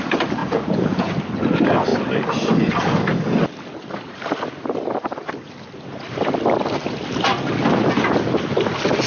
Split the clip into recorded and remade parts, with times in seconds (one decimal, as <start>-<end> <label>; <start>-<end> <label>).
0.0-0.4 recorded; 0.4-1.1 remade; 1.1-9.1 recorded